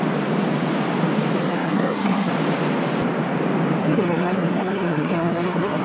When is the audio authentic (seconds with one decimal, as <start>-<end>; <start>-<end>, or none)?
0.0-1.4; 2.3-3.8